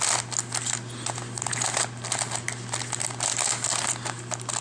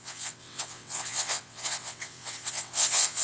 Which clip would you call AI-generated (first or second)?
second